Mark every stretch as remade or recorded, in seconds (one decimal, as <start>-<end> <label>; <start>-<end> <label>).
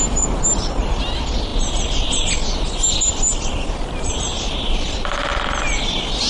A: 0.0-6.3 recorded